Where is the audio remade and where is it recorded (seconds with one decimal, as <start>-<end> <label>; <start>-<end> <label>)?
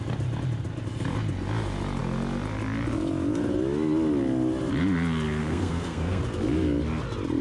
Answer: 0.0-5.4 recorded; 5.4-6.2 remade; 6.2-7.4 recorded